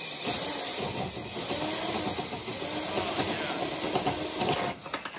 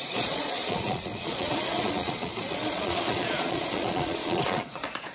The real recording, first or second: first